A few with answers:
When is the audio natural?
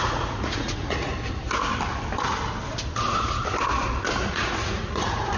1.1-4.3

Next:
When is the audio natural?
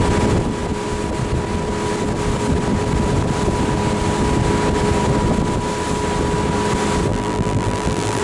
0.0-7.1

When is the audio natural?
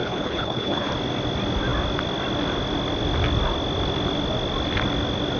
0.9-5.4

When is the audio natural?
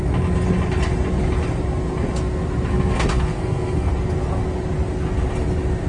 0.0-2.7; 3.9-5.9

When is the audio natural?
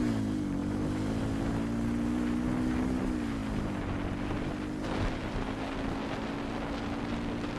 0.0-7.6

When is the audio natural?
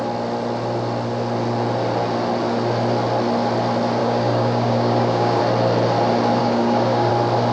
0.0-4.0; 5.4-6.4; 7.1-7.5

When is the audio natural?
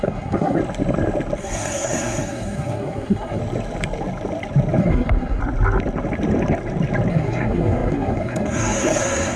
0.6-1.4; 3.4-4.8; 5.4-7.1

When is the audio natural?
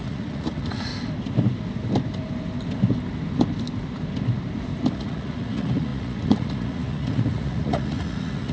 0.9-4.9